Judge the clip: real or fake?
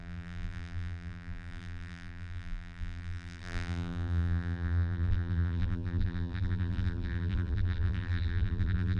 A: fake